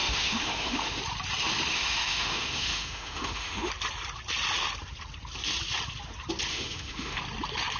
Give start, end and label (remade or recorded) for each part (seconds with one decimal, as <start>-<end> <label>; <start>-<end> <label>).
0.0-1.0 remade; 1.0-1.7 recorded; 1.7-3.7 remade; 3.7-6.5 recorded; 6.5-7.2 remade; 7.2-7.8 recorded